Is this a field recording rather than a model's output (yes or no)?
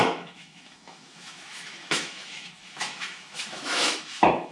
no